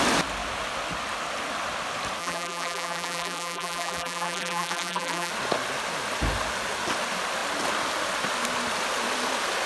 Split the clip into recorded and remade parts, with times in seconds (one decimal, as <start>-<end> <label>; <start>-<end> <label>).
0.0-2.2 recorded; 2.2-5.3 remade; 5.3-9.7 recorded